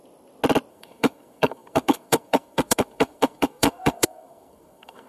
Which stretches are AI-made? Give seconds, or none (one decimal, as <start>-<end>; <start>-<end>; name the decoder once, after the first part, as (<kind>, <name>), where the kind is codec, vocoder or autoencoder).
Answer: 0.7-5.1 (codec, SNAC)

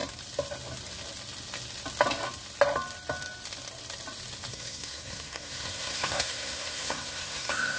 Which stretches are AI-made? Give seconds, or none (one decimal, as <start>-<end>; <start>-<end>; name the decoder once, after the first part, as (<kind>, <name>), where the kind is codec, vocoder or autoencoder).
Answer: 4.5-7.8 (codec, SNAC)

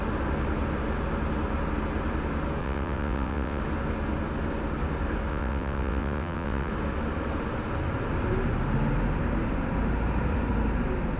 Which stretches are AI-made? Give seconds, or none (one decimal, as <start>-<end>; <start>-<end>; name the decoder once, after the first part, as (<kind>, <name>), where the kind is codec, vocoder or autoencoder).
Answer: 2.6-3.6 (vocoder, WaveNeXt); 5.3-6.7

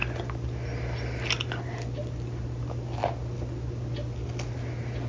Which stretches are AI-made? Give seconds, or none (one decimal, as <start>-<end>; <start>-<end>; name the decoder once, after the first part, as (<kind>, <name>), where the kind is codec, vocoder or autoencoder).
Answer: none

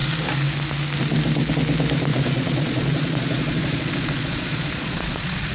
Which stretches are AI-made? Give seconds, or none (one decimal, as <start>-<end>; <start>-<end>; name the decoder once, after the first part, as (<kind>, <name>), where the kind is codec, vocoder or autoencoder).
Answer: 2.1-5.5 (vocoder, Vocos)

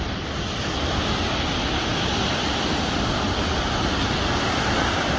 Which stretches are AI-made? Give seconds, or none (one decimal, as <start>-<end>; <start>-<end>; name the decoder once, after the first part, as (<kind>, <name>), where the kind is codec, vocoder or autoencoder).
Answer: none